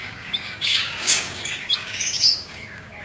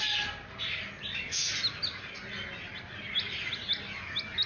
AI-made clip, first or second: first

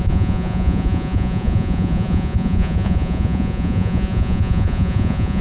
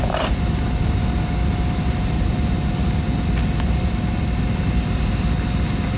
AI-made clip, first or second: first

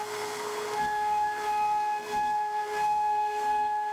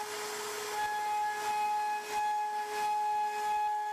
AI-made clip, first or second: first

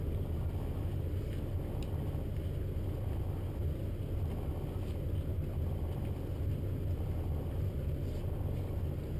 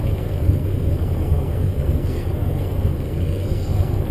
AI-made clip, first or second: second